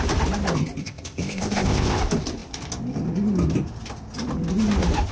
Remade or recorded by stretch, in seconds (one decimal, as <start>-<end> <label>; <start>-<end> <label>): 0.0-0.8 recorded; 0.8-2.0 remade; 2.0-5.1 recorded